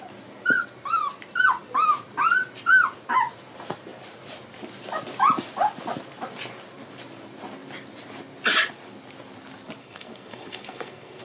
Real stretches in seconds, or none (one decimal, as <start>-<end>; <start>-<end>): 0.0-9.8